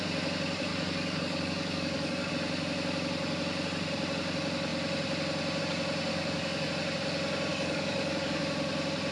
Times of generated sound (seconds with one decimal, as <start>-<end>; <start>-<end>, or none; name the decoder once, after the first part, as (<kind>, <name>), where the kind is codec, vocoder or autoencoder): 0.7-2.3 (codec, DAC); 6.1-6.7; 7.5-8.4